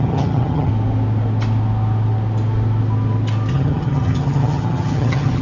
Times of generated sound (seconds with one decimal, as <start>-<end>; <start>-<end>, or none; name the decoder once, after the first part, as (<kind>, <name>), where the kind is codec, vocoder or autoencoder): 0.0-0.7 (vocoder, HiFi-GAN); 3.5-5.4